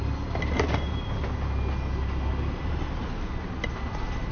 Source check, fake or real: real